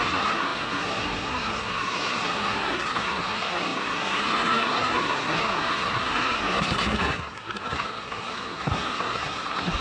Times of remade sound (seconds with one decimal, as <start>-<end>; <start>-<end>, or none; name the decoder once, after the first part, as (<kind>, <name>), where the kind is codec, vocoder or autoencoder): 0.0-9.8 (codec, SNAC)